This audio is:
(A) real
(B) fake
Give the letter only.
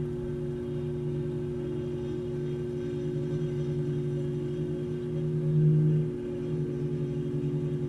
A